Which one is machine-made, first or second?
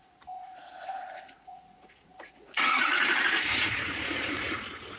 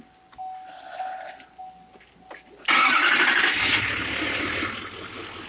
first